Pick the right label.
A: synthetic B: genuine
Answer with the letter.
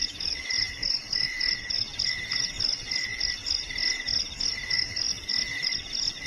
B